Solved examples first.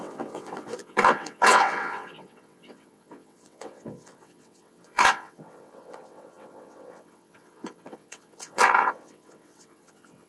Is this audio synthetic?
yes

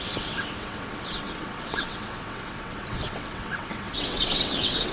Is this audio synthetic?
yes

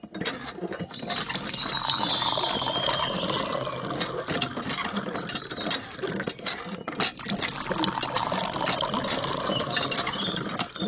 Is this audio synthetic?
no